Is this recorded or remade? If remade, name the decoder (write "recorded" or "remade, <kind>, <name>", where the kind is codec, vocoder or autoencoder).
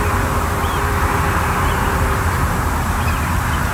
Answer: remade, vocoder, BigVGAN v2